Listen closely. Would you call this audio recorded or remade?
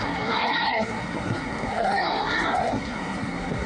remade